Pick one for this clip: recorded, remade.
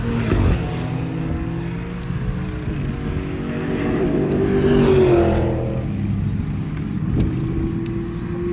recorded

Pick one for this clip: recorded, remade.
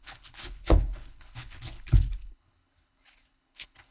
remade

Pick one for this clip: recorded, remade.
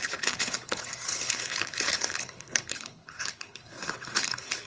remade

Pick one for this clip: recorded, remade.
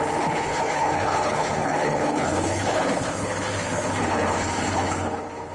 remade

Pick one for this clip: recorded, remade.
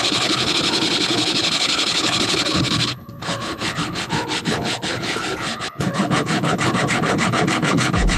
remade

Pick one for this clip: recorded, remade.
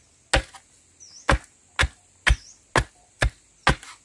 recorded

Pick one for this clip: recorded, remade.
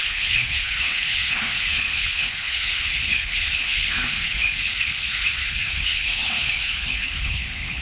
remade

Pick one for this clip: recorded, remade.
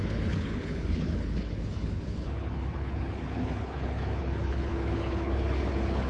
remade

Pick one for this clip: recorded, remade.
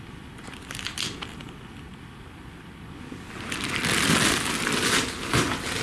recorded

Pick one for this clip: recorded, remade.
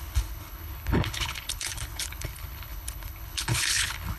remade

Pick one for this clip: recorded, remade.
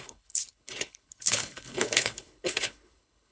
remade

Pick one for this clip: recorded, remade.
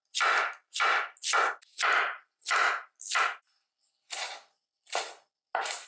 recorded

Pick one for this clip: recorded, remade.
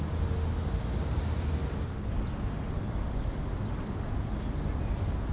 recorded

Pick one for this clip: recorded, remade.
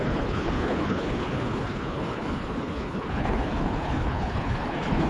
remade